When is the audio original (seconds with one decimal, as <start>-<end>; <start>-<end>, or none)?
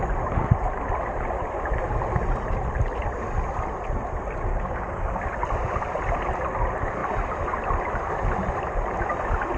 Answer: 0.0-4.5; 5.3-9.6